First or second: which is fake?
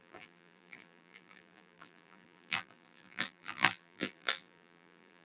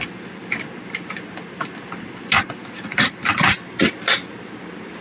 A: first